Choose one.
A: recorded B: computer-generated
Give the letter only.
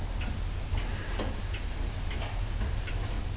A